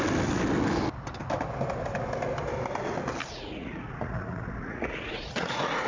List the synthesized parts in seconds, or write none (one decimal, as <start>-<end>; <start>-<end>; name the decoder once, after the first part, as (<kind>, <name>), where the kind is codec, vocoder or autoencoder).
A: 3.2-5.9 (vocoder, Vocos)